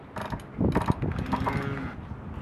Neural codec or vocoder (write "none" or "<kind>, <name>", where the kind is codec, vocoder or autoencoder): none